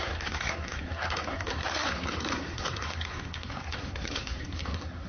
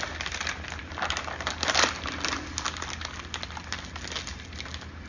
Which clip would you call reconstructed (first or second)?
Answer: first